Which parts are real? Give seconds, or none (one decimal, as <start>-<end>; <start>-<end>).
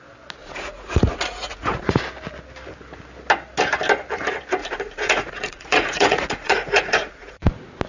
0.0-0.4; 2.0-4.6; 7.5-7.9